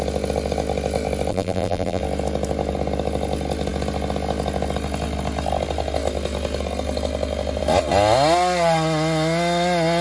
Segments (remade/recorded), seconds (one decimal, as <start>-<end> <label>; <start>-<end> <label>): 0.0-1.3 recorded; 1.3-2.0 remade; 2.0-10.0 recorded